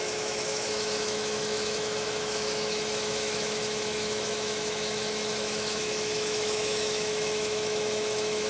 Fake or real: fake